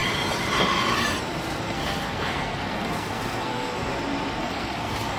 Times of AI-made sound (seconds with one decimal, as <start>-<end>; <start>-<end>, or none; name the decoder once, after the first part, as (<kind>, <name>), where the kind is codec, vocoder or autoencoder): 1.6-3.9 (codec, SNAC); 4.4-5.2